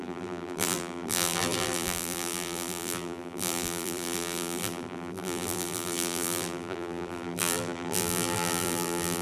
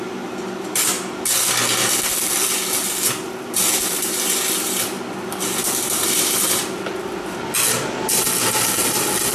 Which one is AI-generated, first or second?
first